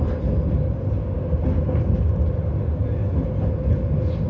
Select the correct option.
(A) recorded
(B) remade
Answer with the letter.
A